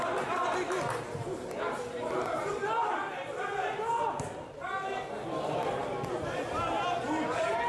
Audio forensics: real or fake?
real